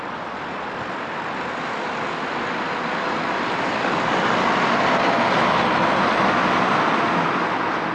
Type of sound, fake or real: fake